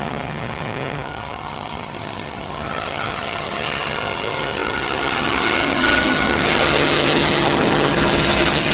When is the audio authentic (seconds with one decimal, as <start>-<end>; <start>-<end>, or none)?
none

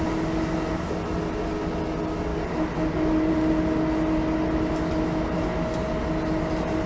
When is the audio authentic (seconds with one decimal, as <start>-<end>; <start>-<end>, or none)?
0.0-6.9